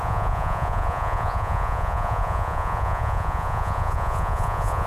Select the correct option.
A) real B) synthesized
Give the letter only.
B